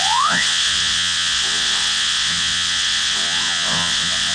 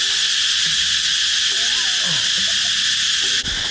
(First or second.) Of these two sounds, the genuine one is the second